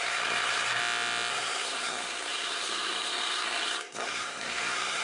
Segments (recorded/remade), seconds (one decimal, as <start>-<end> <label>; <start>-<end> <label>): 0.0-0.8 remade; 0.8-1.3 recorded; 1.3-5.0 remade